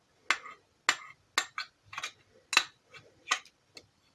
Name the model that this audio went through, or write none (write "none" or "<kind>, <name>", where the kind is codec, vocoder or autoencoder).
none